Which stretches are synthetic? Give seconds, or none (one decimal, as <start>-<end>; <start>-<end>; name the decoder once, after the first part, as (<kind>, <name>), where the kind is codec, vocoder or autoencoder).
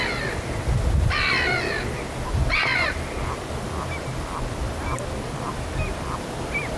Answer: none